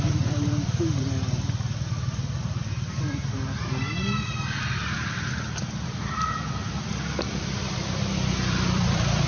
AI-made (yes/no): yes